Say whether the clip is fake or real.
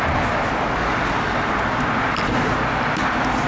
real